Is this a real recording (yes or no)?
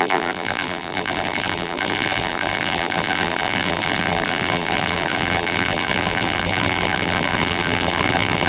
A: no